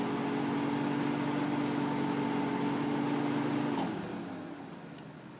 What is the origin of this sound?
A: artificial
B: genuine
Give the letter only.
B